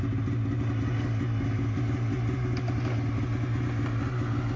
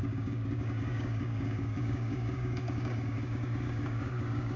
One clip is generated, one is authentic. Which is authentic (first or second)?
first